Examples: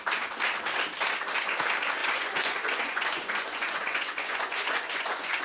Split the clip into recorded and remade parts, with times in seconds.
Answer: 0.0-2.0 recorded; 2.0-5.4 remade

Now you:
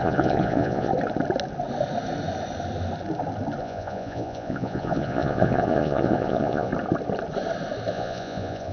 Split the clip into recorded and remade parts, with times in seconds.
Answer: 0.0-0.9 remade; 0.9-3.6 recorded; 3.6-6.7 remade; 6.7-7.9 recorded; 7.9-8.7 remade

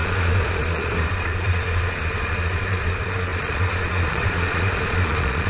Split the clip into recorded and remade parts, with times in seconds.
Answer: 0.0-5.5 remade

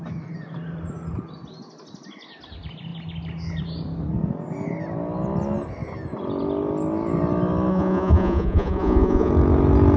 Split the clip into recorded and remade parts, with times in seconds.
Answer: 0.0-7.7 recorded; 7.7-9.3 remade; 9.3-10.0 recorded

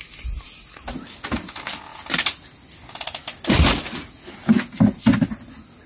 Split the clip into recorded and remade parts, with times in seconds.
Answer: 0.0-5.9 recorded

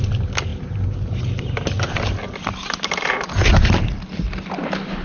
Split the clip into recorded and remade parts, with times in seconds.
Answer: 0.0-5.0 recorded

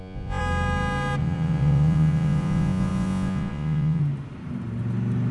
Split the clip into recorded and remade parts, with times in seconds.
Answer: 0.0-0.4 remade; 0.4-1.2 recorded; 1.2-4.0 remade; 4.0-5.3 recorded

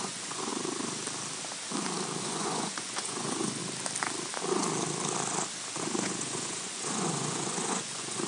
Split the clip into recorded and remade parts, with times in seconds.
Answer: 0.0-0.5 remade; 0.5-2.2 recorded; 2.2-3.6 remade; 3.6-5.8 recorded; 5.8-8.3 remade